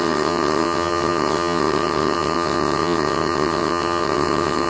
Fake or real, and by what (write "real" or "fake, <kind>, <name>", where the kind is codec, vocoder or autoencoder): fake, vocoder, WaveNeXt